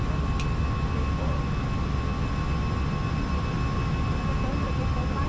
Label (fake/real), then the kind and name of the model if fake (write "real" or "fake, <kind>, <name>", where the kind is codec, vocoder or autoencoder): real